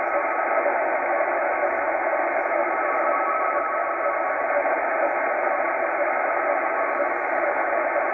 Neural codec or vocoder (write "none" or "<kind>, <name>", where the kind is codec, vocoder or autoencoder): none